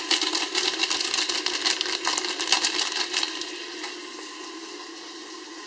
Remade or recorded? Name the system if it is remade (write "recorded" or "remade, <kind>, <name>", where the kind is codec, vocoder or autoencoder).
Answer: recorded